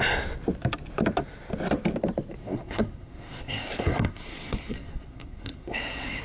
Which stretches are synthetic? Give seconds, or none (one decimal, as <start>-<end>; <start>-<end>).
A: 2.4-6.2